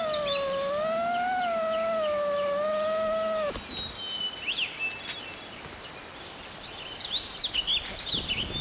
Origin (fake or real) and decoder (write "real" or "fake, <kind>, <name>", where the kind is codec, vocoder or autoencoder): real